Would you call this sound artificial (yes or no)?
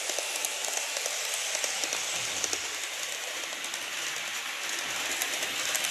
no